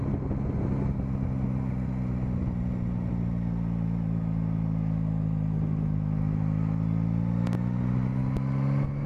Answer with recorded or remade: recorded